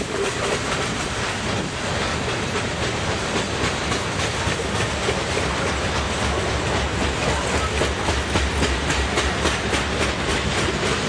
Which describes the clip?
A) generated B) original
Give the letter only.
B